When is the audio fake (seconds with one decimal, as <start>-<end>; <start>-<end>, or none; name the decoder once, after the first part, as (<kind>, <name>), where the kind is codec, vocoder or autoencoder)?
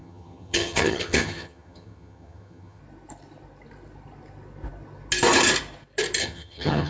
0.0-2.8 (vocoder, HiFi-GAN); 6.2-6.9